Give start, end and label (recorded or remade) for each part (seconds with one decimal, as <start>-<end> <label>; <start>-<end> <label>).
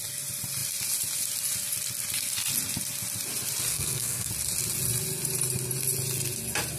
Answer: 0.0-3.7 recorded; 3.7-4.3 remade; 4.3-6.8 recorded